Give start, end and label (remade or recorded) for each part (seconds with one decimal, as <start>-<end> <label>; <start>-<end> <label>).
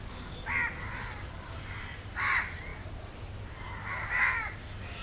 0.0-5.0 recorded